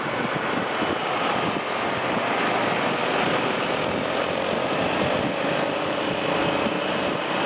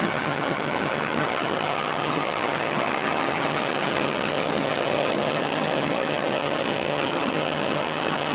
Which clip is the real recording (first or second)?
first